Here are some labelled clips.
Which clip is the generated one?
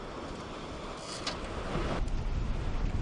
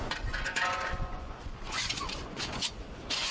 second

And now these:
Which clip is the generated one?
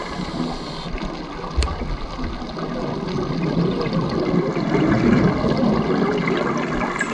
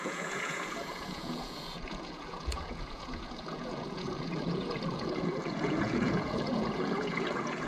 second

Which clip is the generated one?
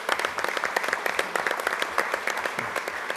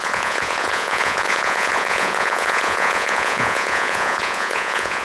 second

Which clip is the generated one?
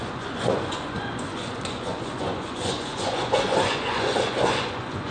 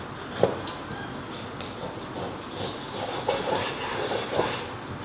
first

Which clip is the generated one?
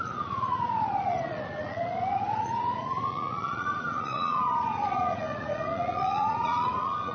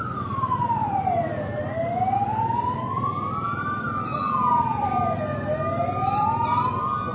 first